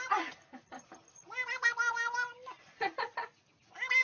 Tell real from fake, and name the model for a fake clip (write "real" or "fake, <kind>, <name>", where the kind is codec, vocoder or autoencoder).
real